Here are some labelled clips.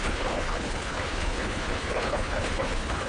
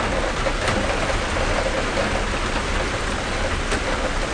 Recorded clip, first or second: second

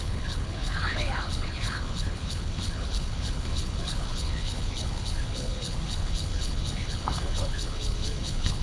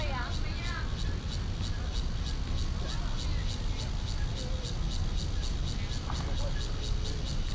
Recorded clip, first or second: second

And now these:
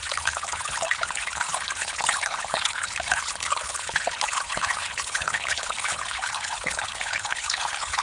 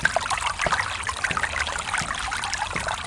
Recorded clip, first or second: second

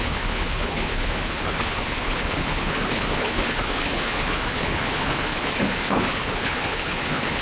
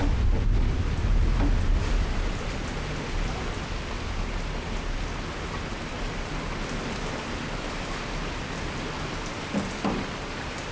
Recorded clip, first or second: second